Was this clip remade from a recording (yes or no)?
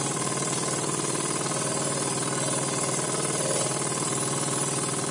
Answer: yes